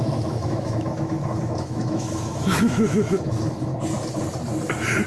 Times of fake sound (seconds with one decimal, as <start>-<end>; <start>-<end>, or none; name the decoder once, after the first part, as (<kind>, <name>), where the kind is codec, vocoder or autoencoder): 0.0-3.7 (autoencoder, DAC-VAE)